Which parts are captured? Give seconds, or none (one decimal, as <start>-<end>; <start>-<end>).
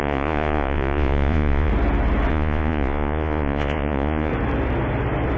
1.7-2.3; 4.3-5.4